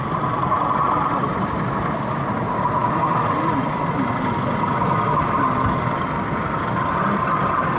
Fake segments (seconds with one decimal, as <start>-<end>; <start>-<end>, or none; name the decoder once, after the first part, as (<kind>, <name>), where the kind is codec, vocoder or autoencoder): none